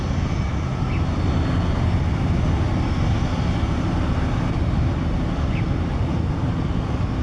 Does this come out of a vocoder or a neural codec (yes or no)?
no